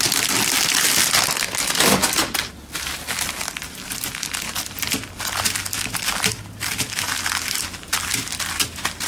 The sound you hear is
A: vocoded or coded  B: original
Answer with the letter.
B